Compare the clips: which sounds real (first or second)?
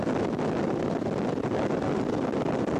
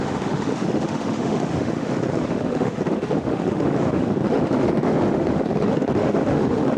first